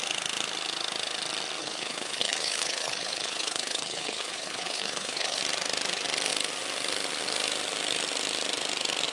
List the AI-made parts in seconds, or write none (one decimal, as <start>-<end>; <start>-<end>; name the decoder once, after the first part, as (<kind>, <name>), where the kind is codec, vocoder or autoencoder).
1.6-5.4 (codec, HILCodec)